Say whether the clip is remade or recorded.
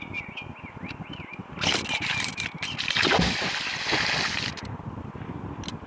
recorded